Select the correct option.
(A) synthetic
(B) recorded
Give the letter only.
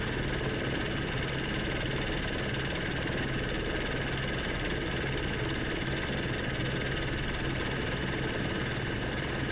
B